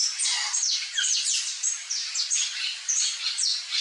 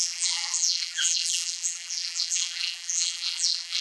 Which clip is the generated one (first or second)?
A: second